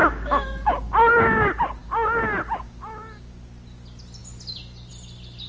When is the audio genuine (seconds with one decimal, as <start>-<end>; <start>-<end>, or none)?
0.9-5.5

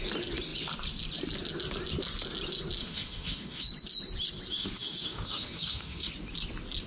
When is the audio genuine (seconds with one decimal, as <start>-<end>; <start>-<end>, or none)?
0.0-2.8; 3.7-4.5; 6.1-6.9